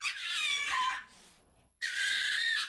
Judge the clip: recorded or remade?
remade